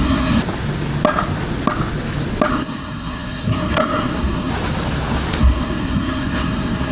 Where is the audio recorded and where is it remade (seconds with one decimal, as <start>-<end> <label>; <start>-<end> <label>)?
0.0-0.4 remade; 0.4-2.5 recorded; 2.5-4.5 remade; 4.5-5.4 recorded; 5.4-6.9 remade